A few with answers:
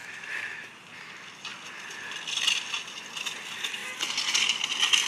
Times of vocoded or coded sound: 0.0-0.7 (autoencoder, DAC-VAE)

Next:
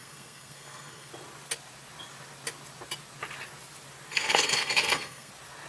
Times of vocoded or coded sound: 0.0-1.1 (codec, SNAC); 4.1-5.3